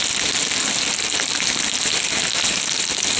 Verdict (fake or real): real